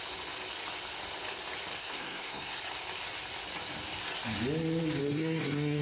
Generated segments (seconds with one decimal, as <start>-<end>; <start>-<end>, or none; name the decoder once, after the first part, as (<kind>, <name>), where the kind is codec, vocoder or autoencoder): 1.8-2.6 (codec, SNAC); 5.0-5.8